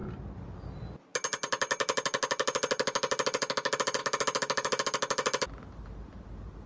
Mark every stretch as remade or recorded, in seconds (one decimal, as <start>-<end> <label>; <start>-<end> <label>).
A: 0.0-6.7 recorded